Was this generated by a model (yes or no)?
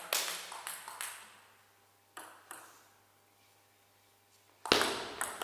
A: no